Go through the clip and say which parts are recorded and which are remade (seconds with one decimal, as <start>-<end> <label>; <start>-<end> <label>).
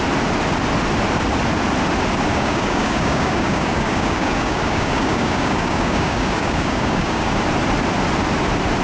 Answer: 0.0-2.3 recorded; 2.3-7.4 remade; 7.4-8.8 recorded